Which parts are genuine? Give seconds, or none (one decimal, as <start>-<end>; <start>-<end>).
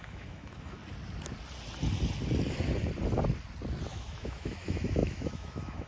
0.8-3.9